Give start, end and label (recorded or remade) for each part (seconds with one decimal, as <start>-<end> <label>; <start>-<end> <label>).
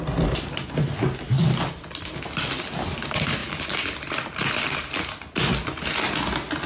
0.0-6.7 recorded